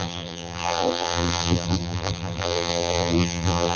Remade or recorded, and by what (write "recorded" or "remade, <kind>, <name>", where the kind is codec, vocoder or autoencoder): remade, vocoder, BigVGAN v2